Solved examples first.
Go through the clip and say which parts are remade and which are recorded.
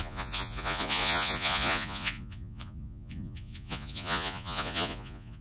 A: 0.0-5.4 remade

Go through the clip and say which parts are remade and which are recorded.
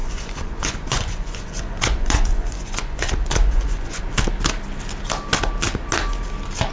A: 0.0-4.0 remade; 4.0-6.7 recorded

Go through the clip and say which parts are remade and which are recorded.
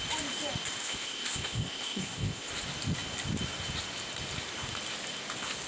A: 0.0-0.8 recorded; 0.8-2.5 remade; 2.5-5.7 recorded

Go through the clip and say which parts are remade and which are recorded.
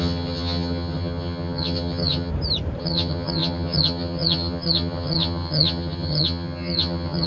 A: 0.0-2.3 remade; 2.3-2.8 recorded; 2.8-7.3 remade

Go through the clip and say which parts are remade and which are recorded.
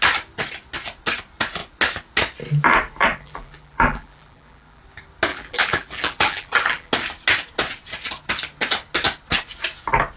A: 0.0-3.1 recorded; 3.1-4.8 remade; 4.8-5.3 recorded; 5.3-6.9 remade; 6.9-10.2 recorded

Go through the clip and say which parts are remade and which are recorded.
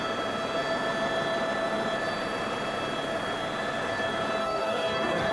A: 0.0-4.4 recorded; 4.4-5.3 remade